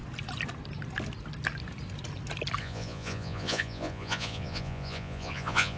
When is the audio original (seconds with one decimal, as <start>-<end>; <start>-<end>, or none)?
0.0-2.6